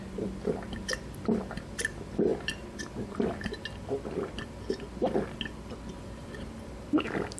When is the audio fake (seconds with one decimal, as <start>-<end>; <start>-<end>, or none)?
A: none